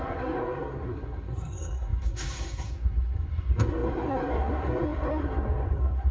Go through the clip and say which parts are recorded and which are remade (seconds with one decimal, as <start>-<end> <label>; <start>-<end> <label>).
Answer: 0.0-6.1 remade